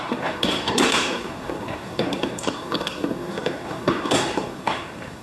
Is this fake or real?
fake